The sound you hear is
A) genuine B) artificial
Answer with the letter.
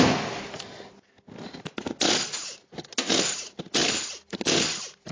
A